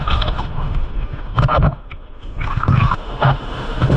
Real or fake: fake